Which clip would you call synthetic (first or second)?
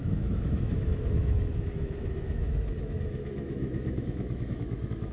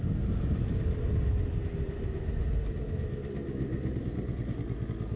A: first